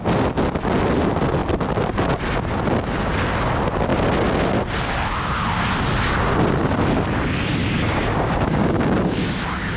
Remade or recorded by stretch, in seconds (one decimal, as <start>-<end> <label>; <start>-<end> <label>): 0.0-7.6 recorded; 7.6-9.3 remade; 9.3-9.8 recorded